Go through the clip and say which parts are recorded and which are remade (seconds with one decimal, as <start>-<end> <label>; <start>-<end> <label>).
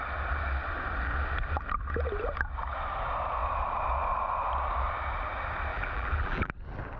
0.0-5.7 recorded; 5.7-6.5 remade; 6.5-7.0 recorded